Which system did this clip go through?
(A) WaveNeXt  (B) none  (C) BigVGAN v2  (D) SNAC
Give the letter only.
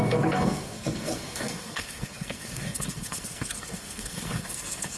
D